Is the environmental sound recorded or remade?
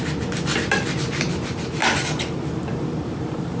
recorded